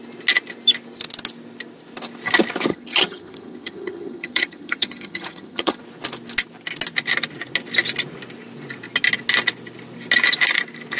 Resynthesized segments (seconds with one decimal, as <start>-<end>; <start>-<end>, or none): 2.7-5.8